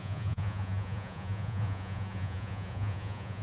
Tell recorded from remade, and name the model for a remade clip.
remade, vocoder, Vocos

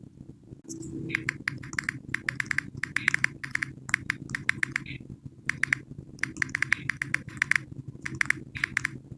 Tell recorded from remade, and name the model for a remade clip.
recorded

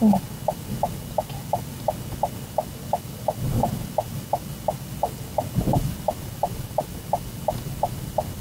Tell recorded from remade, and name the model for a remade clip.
recorded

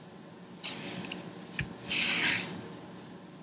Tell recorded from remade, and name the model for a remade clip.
recorded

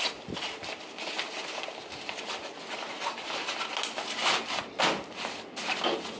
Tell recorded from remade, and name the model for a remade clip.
recorded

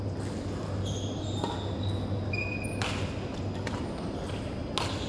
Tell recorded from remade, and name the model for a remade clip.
recorded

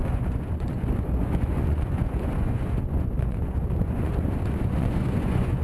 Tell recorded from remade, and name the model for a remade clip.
remade, vocoder, Vocos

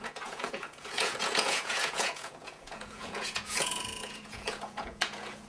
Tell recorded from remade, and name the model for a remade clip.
remade, vocoder, Vocos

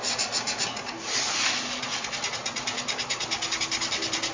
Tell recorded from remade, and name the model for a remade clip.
recorded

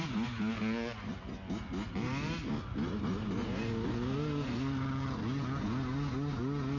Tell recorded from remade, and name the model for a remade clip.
recorded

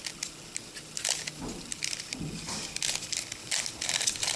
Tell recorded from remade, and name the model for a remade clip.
recorded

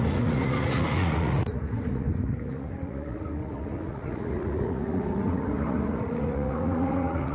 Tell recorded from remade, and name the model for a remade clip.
remade, vocoder, Vocos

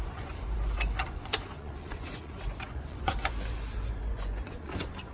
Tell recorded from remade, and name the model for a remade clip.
remade, vocoder, Vocos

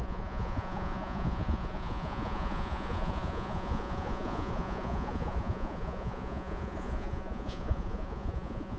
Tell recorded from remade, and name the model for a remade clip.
remade, vocoder, Vocos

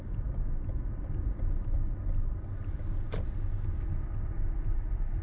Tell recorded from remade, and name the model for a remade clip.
recorded